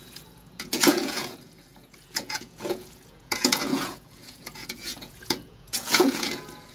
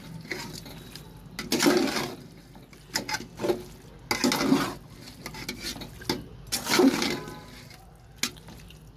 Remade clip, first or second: first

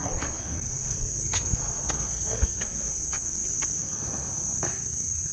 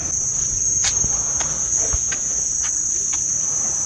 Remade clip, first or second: first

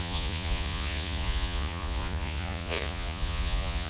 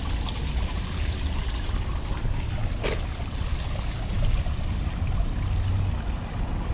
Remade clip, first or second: first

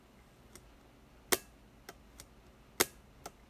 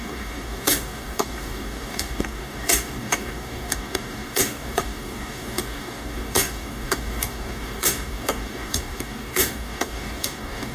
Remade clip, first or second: second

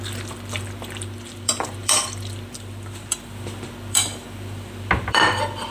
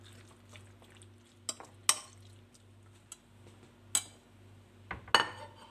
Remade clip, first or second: first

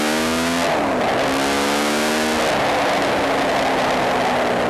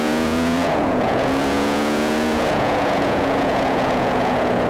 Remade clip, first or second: second